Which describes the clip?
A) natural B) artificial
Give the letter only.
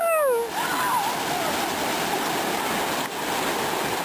A